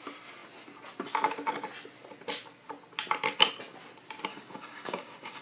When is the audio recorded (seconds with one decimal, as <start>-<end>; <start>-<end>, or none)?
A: 0.0-4.3